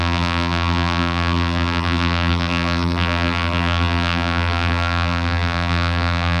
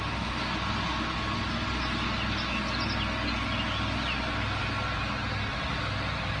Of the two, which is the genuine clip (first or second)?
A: second